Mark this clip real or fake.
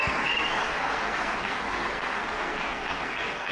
fake